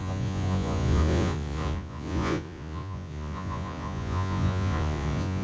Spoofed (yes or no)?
yes